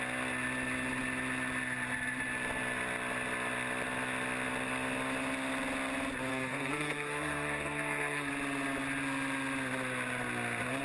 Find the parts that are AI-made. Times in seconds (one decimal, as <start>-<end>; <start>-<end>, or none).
6.3-8.3